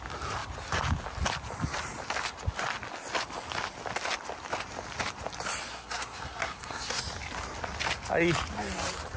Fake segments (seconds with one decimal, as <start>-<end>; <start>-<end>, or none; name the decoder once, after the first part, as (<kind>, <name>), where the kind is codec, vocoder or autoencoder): 5.7-7.0 (codec, SNAC)